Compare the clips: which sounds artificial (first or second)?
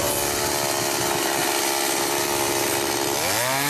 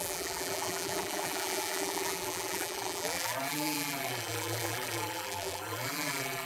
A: second